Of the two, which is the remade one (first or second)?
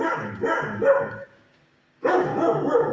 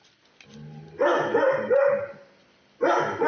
first